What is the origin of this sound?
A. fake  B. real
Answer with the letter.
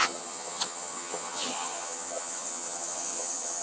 A